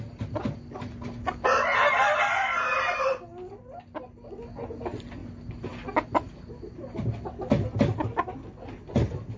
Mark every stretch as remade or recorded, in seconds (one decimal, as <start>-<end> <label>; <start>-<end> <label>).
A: 0.0-9.4 recorded